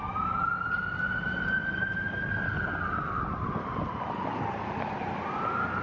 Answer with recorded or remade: recorded